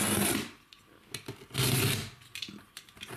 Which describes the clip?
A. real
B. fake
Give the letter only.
A